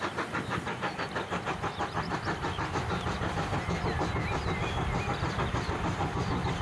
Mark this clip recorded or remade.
recorded